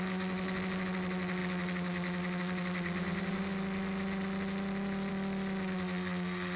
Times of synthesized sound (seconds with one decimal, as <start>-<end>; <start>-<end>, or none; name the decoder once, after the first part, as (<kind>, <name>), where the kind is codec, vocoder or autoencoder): none